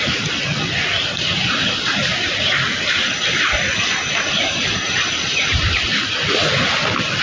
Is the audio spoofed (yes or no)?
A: no